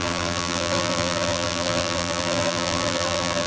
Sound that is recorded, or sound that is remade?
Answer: remade